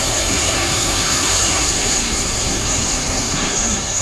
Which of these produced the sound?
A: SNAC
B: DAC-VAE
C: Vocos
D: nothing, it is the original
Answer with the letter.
A